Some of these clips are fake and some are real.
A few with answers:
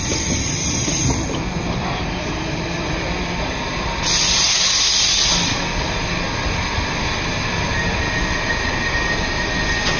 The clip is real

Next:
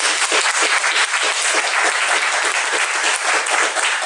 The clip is real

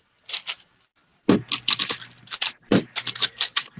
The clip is fake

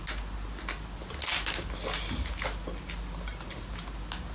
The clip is real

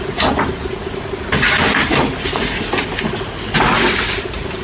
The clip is real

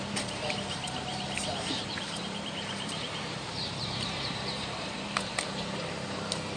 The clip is fake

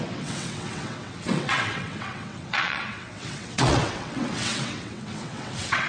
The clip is fake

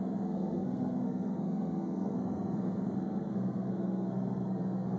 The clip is fake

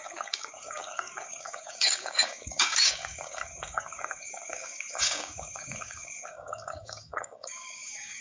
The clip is fake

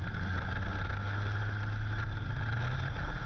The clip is real